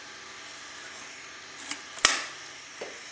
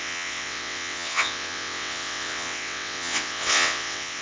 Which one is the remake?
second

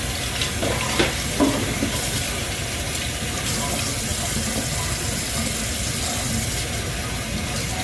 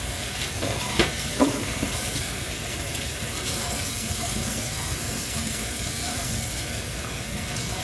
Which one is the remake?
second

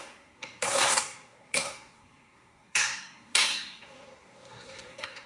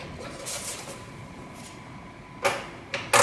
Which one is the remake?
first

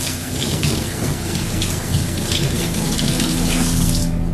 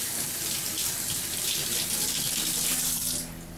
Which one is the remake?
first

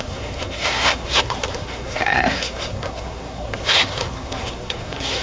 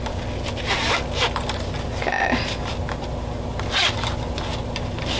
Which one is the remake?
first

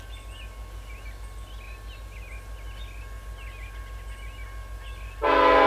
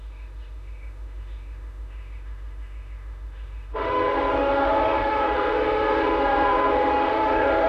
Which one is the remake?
second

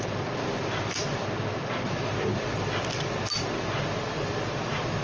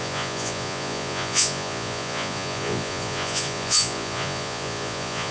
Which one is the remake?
second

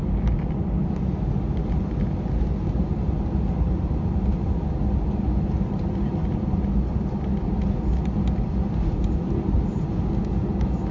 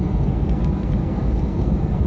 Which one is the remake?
second